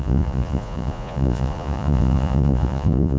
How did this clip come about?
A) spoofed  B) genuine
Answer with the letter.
A